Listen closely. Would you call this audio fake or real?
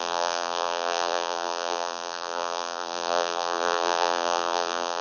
fake